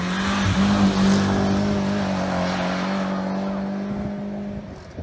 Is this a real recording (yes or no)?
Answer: yes